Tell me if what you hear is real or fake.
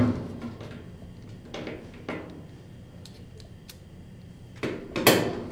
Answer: real